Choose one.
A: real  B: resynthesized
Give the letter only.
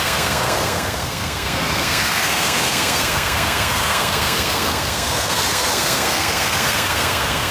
B